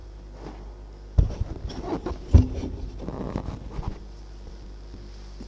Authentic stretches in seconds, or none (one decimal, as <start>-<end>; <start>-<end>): 0.0-5.5